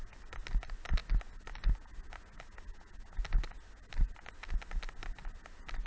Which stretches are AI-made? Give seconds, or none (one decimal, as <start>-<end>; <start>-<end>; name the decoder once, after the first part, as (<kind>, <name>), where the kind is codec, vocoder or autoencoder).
none